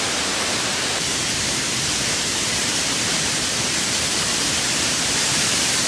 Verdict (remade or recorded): remade